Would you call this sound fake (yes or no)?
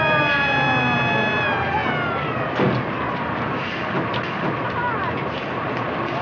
no